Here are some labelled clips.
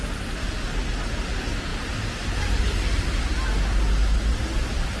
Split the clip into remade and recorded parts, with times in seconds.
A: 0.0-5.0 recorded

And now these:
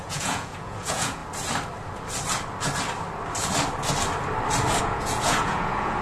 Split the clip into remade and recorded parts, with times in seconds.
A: 0.0-1.2 remade; 1.2-4.8 recorded; 4.8-6.0 remade

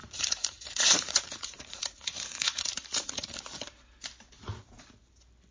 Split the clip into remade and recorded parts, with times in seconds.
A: 0.0-3.3 remade; 3.3-5.5 recorded

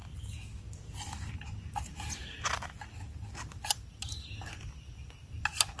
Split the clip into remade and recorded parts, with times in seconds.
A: 0.0-5.8 recorded

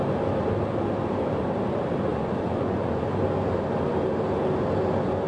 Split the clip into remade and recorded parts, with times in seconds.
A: 0.0-2.1 recorded; 2.1-3.0 remade; 3.0-5.3 recorded